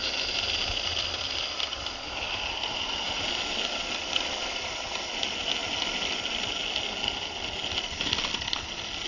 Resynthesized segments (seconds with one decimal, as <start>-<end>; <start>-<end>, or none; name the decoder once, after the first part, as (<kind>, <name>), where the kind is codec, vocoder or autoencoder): none